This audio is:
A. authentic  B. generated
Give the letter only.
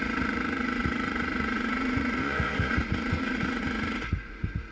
B